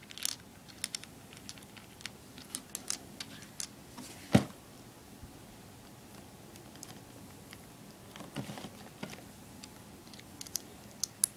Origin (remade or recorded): recorded